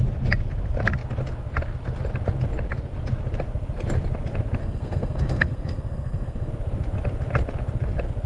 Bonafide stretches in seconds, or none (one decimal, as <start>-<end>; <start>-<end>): 0.0-4.6; 6.5-8.3